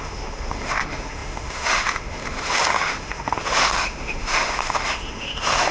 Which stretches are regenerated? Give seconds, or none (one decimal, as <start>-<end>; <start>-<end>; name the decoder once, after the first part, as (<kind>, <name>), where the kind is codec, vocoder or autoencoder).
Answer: 0.0-5.7 (autoencoder, DAC-VAE)